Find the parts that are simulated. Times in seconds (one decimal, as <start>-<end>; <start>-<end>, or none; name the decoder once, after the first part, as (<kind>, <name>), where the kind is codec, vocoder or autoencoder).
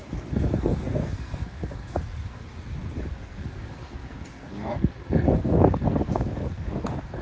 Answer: 0.0-2.4 (codec, SNAC); 3.0-7.2